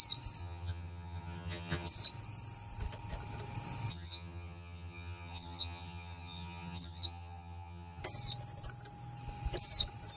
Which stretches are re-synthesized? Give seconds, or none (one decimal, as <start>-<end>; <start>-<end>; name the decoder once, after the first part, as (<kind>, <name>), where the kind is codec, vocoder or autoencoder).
0.4-1.9 (vocoder, HiFi-GAN); 3.9-8.0